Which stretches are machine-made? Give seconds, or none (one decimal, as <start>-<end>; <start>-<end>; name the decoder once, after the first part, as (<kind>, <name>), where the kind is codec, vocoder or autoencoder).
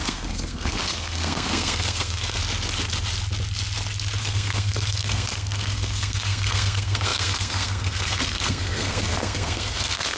0.0-2.4 (codec, SNAC); 4.2-10.2